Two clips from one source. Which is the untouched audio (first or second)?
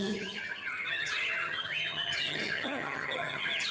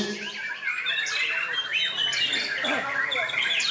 second